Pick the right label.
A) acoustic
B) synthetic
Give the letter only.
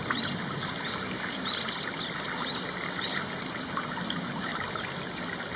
A